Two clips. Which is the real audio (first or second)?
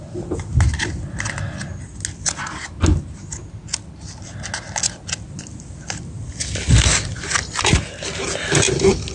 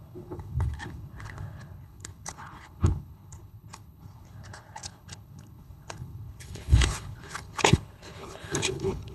first